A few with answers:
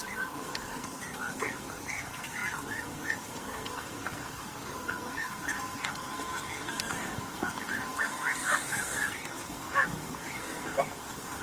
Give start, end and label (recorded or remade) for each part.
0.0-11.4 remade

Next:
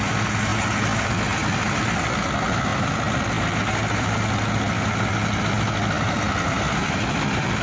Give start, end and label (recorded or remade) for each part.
0.0-7.6 recorded

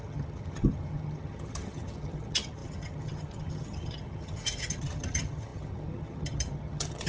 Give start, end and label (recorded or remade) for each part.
0.0-7.1 remade

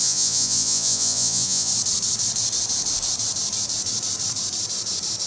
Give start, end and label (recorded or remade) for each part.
0.0-1.7 remade; 1.7-5.3 recorded

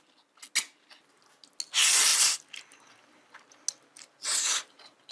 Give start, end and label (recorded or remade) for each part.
0.0-5.1 recorded

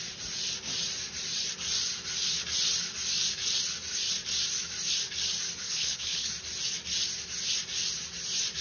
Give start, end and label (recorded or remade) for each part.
0.0-5.6 recorded; 5.6-6.3 remade; 6.3-8.6 recorded

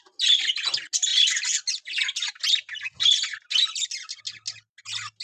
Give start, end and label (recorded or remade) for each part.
0.0-5.2 recorded